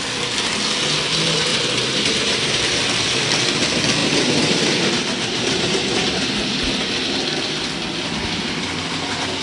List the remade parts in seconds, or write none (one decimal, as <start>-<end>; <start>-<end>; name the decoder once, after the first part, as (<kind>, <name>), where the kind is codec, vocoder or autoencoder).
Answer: 1.5-2.8 (vocoder, BigVGAN v2); 4.0-7.1